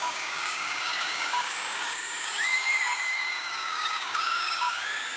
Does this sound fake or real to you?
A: fake